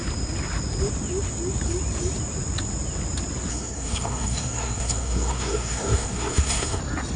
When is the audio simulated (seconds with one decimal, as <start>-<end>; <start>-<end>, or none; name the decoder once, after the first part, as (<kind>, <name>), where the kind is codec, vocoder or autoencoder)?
3.5-6.8 (codec, SNAC)